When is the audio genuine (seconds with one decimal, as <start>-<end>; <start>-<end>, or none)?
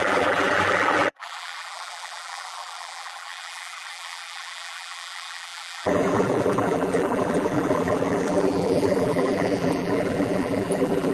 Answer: none